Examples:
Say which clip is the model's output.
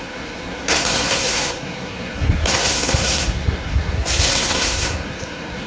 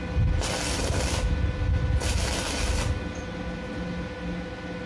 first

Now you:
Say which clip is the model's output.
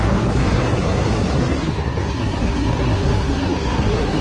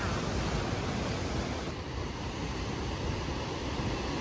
first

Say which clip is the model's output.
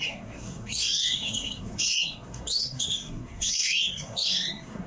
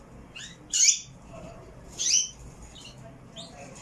first